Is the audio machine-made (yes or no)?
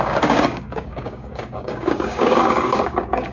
yes